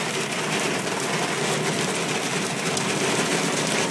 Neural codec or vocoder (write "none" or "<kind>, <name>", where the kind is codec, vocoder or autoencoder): none